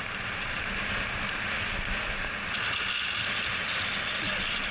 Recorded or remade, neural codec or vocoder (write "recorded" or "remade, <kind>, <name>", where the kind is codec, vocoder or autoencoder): recorded